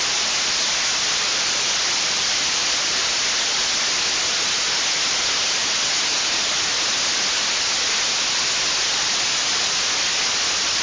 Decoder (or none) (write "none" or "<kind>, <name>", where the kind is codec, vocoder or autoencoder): none